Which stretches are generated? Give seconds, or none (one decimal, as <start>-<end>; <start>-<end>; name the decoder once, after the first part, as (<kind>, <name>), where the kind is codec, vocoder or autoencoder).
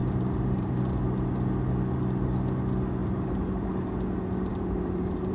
0.0-0.8 (vocoder, BigVGAN v2); 3.0-3.7; 4.5-5.3